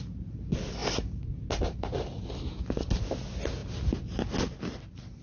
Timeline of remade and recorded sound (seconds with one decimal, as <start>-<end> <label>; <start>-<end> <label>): 0.0-5.2 recorded